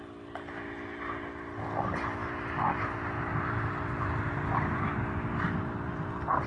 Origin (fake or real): real